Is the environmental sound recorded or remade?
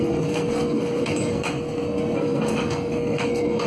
remade